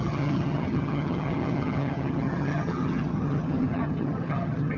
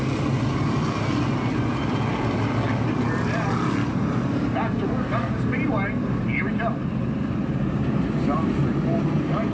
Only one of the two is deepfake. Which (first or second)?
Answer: first